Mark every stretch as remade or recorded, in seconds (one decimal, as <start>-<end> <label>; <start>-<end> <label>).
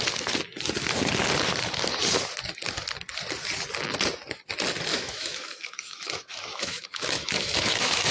0.0-4.9 recorded; 4.9-8.1 remade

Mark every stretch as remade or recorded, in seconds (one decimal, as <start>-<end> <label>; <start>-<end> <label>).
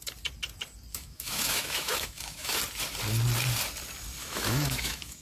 0.0-0.9 recorded; 0.9-2.6 remade; 2.6-4.2 recorded; 4.2-5.2 remade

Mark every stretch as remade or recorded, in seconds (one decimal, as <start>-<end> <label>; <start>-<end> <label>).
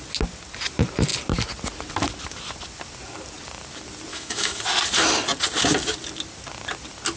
0.0-4.1 recorded; 4.1-4.6 remade; 4.6-7.2 recorded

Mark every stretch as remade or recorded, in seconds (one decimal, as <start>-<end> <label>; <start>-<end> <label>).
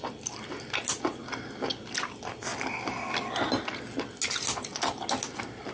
0.0-5.7 recorded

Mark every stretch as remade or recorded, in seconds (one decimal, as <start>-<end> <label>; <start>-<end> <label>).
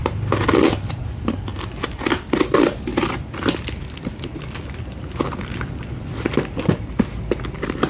0.0-7.9 recorded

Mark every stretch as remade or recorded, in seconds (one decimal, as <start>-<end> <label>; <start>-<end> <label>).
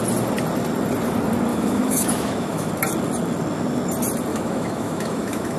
0.0-1.5 recorded; 1.5-2.7 remade; 2.7-4.3 recorded; 4.3-5.6 remade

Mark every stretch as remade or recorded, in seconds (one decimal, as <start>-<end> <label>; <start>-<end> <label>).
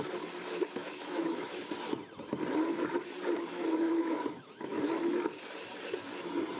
0.0-0.8 recorded; 0.8-1.6 remade; 1.6-3.5 recorded; 3.5-4.8 remade; 4.8-6.6 recorded